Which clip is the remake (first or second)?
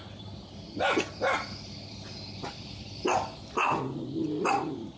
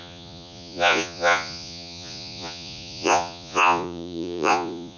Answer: second